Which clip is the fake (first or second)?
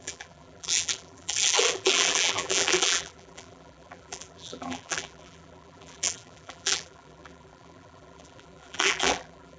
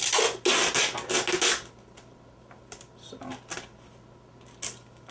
first